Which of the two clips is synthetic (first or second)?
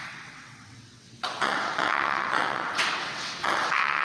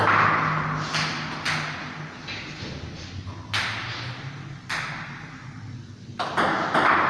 first